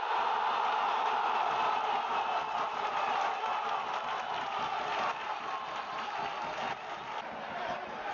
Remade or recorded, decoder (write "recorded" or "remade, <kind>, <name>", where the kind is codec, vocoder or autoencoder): recorded